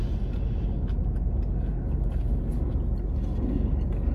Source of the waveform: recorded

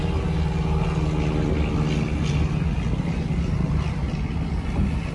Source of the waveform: recorded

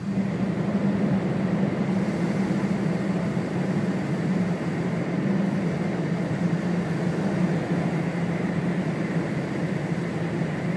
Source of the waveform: recorded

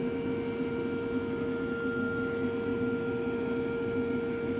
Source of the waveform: recorded